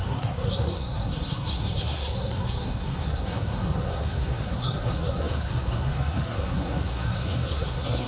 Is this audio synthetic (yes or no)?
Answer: yes